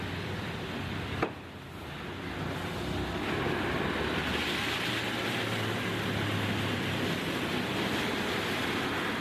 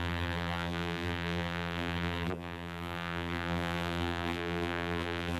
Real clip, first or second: first